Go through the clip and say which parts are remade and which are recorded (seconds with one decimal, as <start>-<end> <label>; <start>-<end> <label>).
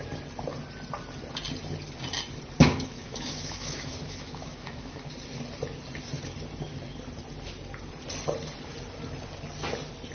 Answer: 0.0-2.6 recorded; 2.6-5.1 remade; 5.1-10.1 recorded